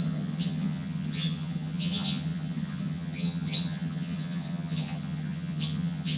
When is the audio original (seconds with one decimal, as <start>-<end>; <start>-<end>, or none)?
none